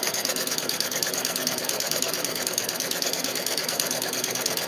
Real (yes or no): no